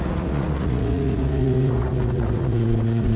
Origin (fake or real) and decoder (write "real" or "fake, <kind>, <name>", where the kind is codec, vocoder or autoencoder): fake, vocoder, Vocos